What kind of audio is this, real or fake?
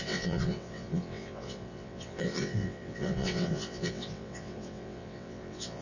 fake